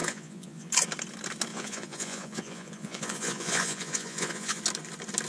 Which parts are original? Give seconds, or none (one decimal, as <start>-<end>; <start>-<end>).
0.7-1.5; 4.6-5.3